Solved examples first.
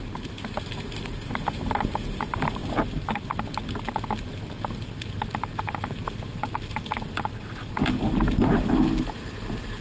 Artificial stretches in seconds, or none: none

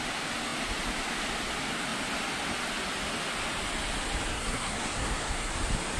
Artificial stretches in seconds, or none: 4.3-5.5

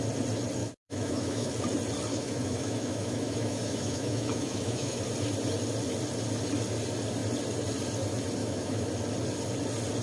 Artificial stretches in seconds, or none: 0.6-1.5; 2.1-5.0; 8.4-8.9

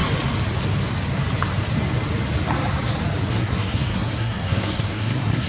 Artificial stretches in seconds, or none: 3.3-5.5

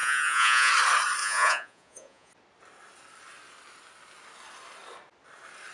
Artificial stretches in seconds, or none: 0.0-0.7; 1.2-2.3

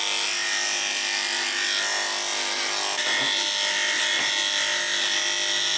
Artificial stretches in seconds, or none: none

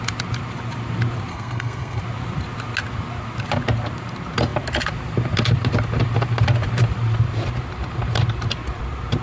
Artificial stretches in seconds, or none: 1.3-2.0